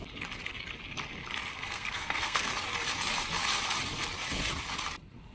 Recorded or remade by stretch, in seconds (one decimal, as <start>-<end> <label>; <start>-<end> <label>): 0.0-1.5 recorded; 1.5-2.5 remade; 2.5-5.3 recorded